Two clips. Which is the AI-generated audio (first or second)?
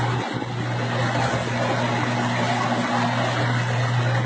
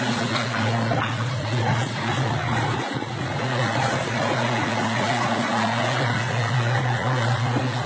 second